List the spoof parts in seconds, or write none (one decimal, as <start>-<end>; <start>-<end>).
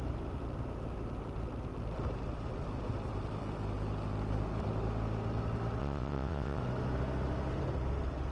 5.8-6.6